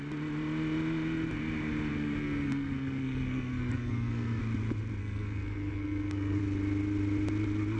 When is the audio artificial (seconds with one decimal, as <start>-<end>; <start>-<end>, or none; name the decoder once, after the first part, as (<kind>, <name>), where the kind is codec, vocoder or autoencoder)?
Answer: 1.9-4.4 (codec, SNAC); 5.0-6.4